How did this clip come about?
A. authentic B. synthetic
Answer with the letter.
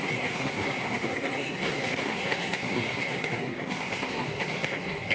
B